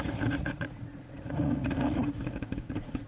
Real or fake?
fake